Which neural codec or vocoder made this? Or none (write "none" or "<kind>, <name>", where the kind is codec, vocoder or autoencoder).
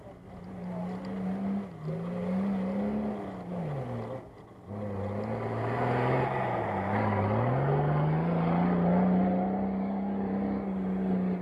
none